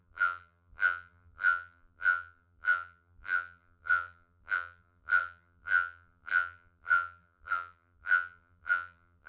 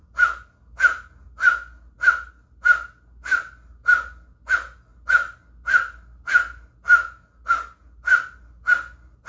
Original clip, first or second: second